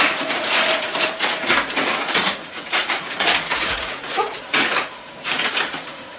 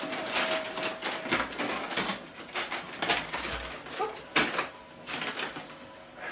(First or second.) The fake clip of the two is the first